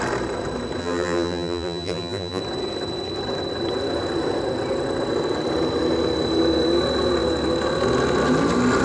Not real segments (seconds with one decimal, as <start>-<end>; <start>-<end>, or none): 0.8-2.4